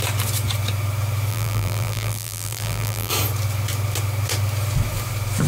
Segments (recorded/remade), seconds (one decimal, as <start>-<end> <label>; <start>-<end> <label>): 0.0-1.3 recorded; 1.3-3.1 remade; 3.1-5.5 recorded